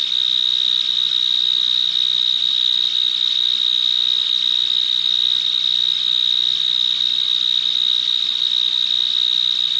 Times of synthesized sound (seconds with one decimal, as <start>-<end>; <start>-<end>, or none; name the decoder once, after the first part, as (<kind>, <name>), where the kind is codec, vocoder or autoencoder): none